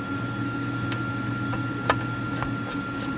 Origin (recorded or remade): recorded